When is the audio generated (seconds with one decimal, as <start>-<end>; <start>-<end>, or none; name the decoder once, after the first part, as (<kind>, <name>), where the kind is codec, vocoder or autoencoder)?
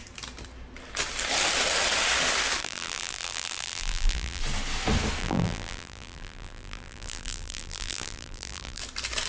2.6-4.4 (vocoder, BigVGAN v2); 5.2-8.8